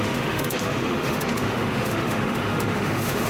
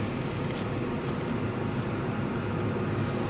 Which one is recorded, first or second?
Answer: second